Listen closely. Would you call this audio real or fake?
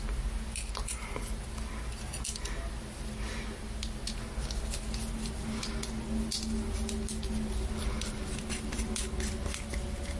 real